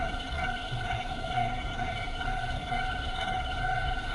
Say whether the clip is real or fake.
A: fake